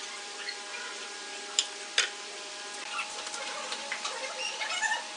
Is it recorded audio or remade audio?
recorded